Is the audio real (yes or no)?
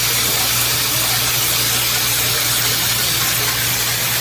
yes